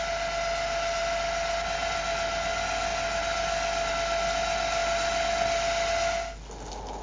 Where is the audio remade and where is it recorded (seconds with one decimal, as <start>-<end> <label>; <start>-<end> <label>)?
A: 0.0-7.0 recorded